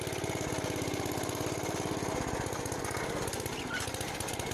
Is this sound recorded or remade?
recorded